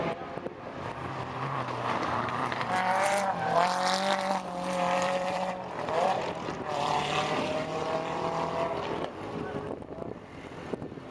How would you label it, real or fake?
fake